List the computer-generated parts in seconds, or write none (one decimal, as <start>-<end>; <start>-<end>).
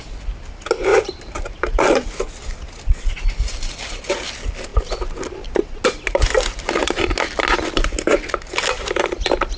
0.9-2.1